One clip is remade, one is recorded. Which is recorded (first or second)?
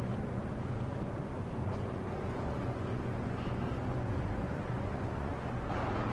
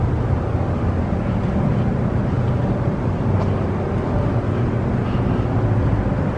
second